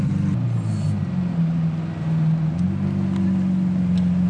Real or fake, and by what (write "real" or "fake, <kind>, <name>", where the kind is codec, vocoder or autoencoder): real